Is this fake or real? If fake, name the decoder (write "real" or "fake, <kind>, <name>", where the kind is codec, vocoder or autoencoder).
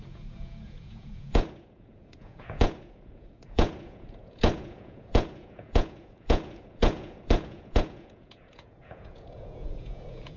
fake, vocoder, Vocos